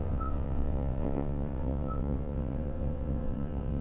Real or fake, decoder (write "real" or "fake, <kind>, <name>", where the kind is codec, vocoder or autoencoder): fake, vocoder, WaveNeXt